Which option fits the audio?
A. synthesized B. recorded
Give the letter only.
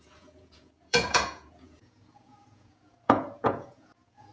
A